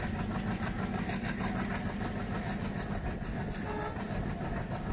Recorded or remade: recorded